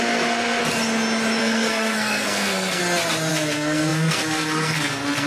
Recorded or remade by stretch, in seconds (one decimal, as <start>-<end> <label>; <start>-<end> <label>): 0.0-0.6 remade; 0.6-1.4 recorded; 1.4-2.8 remade; 2.8-3.3 recorded; 3.3-5.3 remade